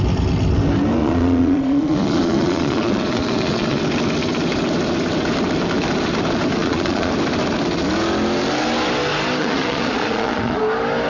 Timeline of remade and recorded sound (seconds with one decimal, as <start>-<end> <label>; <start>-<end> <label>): 0.0-1.0 recorded; 1.0-3.8 remade; 3.8-6.6 recorded; 6.6-7.1 remade; 7.1-9.4 recorded; 9.4-10.6 remade; 10.6-11.1 recorded

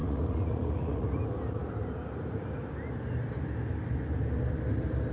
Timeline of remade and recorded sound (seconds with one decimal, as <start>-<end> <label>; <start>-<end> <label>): 0.0-1.2 remade; 1.2-5.1 recorded

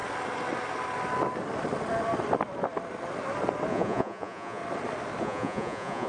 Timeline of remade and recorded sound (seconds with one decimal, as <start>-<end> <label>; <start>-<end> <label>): 0.0-3.7 recorded; 3.7-4.6 remade; 4.6-5.2 recorded; 5.2-6.1 remade

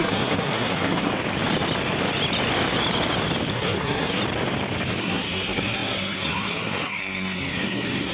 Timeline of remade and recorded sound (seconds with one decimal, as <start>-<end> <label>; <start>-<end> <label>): 0.0-1.1 remade; 1.1-3.5 recorded; 3.5-4.2 remade; 4.2-5.0 recorded; 5.0-8.1 remade

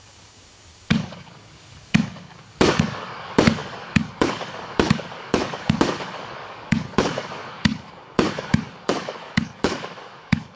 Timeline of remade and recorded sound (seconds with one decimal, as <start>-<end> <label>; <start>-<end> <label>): 0.0-10.6 remade

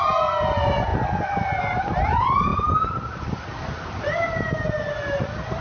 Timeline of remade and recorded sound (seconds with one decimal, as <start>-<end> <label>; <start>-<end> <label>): 0.0-5.6 recorded

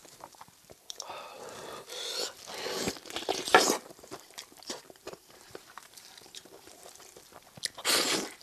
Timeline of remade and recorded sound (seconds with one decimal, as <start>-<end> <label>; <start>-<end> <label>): 0.0-2.1 remade; 2.1-3.5 recorded; 3.5-7.1 remade; 7.1-8.4 recorded